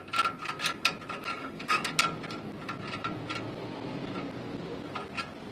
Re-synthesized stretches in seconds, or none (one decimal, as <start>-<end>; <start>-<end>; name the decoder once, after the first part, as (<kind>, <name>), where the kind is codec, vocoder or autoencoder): 1.4-1.9 (autoencoder, DAC-VAE)